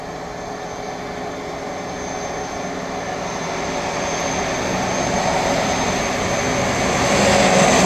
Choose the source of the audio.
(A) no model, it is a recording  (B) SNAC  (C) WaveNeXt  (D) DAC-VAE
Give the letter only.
A